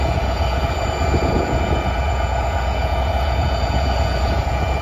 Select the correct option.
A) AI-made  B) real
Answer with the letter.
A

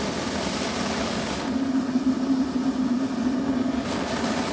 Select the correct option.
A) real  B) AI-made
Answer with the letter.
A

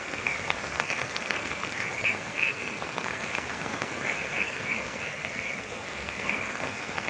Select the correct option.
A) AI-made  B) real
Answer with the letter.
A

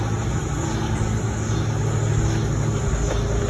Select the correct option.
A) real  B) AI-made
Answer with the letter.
A